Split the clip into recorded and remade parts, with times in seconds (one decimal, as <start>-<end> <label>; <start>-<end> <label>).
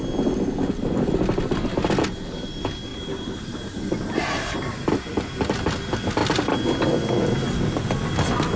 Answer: 0.0-2.9 recorded; 2.9-4.9 remade; 4.9-8.6 recorded